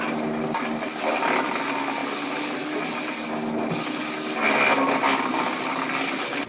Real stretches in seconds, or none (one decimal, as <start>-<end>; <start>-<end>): 0.0-6.5